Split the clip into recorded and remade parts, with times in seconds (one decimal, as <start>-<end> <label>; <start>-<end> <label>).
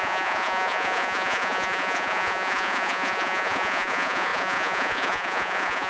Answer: 0.0-5.9 remade